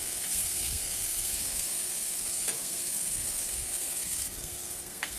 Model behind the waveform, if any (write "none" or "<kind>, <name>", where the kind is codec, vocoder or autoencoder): codec, SNAC